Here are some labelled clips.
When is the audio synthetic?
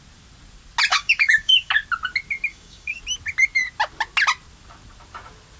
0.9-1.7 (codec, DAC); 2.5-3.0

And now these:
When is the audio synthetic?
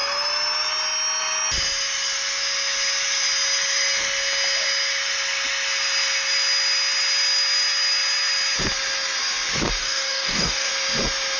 9.8-10.7 (codec, DAC)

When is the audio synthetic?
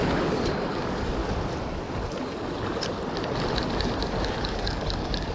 0.0-1.2 (codec, DAC); 4.4-5.3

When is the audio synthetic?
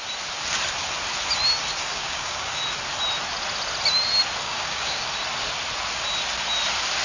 1.8-2.6 (codec, DAC); 4.4-5.1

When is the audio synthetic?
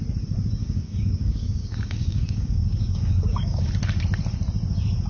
0.6-3.7 (codec, DAC)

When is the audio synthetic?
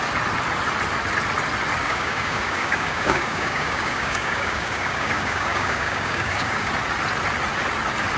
1.8-6.7 (codec, DAC)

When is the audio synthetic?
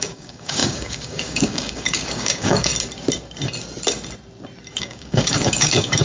0.0-2.7 (codec, DAC); 4.8-6.0